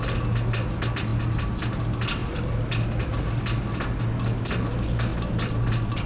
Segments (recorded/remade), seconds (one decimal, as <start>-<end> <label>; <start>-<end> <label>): 0.0-6.1 recorded

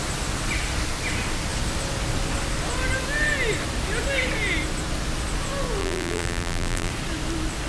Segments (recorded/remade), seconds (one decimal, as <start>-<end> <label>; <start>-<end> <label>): 0.0-5.8 recorded; 5.8-6.9 remade; 6.9-7.7 recorded